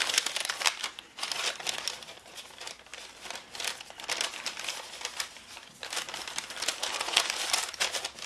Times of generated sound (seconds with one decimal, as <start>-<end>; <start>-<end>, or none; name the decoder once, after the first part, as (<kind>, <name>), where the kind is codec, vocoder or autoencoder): 2.9-7.6 (vocoder, BigVGAN v2)